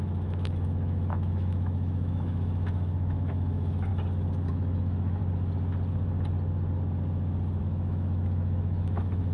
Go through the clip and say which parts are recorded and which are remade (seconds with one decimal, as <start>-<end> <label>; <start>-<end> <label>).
0.0-3.9 remade; 3.9-4.5 recorded; 4.5-5.2 remade; 5.2-7.6 recorded; 7.6-9.3 remade